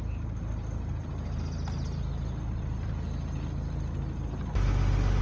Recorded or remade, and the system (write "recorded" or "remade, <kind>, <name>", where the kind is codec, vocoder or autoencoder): recorded